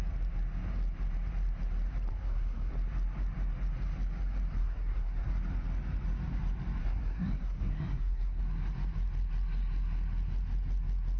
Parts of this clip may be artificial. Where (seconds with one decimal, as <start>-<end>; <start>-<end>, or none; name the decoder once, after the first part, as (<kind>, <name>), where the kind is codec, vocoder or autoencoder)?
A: 2.1-2.7 (codec, SNAC); 4.6-5.3; 6.8-8.4